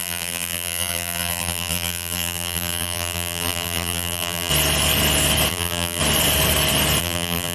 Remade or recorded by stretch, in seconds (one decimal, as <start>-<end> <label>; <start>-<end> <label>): 0.0-4.5 remade; 4.5-5.5 recorded; 5.5-6.0 remade; 6.0-7.0 recorded; 7.0-7.5 remade